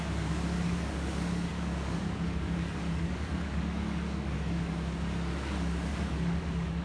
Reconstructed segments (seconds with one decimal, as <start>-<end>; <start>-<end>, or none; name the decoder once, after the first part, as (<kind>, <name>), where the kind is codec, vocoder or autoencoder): 0.0-6.8 (codec, DAC)